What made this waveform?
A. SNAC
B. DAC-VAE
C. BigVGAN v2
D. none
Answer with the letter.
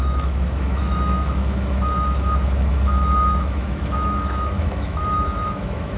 B